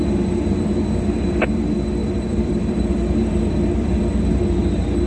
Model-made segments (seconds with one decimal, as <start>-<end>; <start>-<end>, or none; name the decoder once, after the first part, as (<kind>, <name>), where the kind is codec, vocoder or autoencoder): 2.0-4.0 (vocoder, BigVGAN v2)